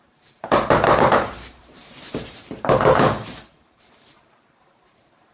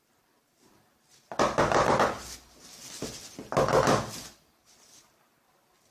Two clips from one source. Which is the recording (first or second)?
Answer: second